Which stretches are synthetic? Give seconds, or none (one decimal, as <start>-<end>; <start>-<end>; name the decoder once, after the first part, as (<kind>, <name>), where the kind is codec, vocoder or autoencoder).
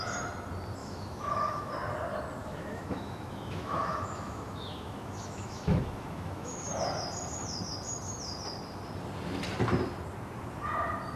0.8-1.7 (autoencoder, DAC-VAE); 2.4-6.7